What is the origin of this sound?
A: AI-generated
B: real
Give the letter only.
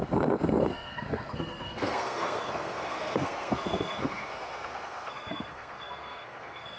A